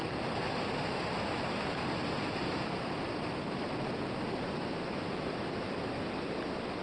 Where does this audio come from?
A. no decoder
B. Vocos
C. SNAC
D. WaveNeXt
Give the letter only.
A